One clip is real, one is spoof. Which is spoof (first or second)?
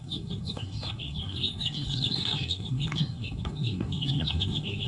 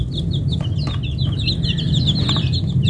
first